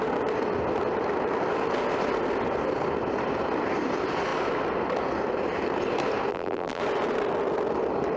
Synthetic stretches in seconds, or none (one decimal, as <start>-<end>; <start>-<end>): 6.3-6.8